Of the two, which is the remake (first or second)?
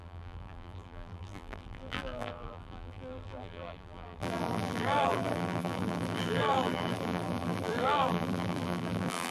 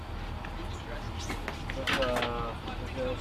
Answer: first